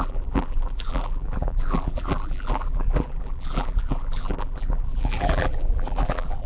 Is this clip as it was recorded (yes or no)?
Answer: no